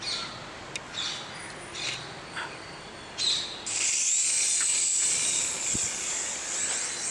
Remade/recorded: recorded